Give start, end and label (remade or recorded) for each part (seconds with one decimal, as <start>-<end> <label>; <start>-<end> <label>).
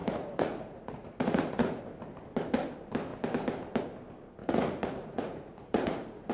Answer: 0.0-1.8 remade; 1.8-4.4 recorded; 4.4-6.3 remade